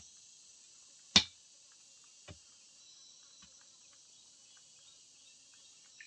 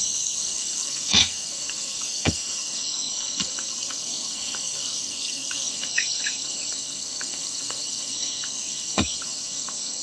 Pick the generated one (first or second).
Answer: second